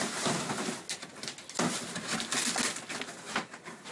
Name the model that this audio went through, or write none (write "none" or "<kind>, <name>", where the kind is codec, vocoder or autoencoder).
none